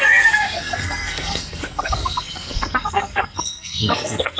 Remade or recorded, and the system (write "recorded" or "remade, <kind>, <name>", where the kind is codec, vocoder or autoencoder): remade, codec, SNAC